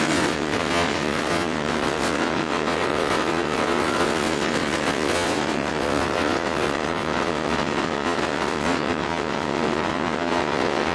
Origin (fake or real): fake